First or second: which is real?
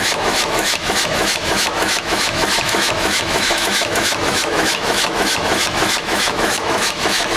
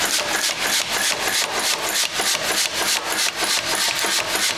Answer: second